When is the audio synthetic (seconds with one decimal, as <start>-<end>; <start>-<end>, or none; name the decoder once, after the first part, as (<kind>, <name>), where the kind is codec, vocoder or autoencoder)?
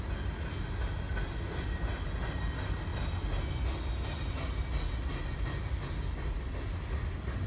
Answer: none